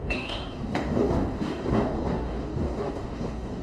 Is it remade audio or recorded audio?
remade